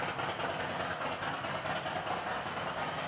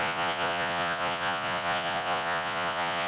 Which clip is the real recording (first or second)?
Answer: first